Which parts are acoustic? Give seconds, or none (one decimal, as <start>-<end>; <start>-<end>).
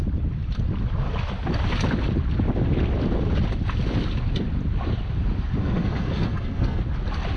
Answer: 0.0-5.6; 6.8-7.4